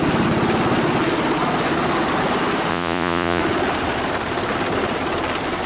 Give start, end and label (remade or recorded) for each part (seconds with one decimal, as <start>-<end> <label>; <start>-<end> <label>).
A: 0.0-2.7 recorded; 2.7-3.4 remade; 3.4-5.7 recorded